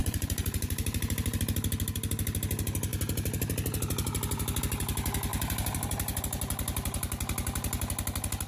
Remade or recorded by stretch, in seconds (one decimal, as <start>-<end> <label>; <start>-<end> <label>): 0.0-1.4 remade; 1.4-5.3 recorded; 5.3-6.2 remade; 6.2-8.5 recorded